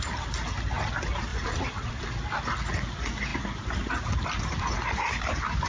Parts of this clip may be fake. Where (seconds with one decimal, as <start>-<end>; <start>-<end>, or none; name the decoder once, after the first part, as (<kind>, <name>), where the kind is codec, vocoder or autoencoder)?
1.3-1.9 (vocoder, Vocos)